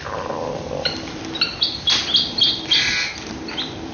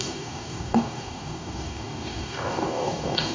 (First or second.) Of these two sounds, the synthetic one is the second